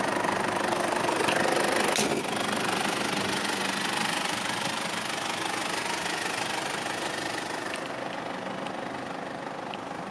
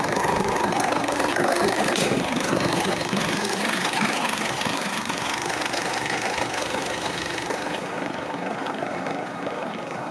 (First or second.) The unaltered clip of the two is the first